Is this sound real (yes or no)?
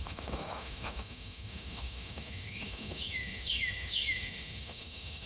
no